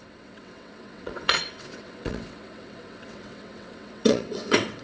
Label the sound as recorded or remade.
remade